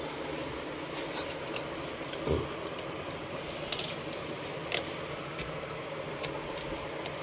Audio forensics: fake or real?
real